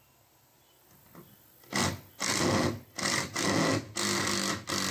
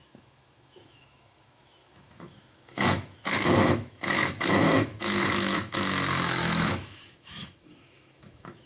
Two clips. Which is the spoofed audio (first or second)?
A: second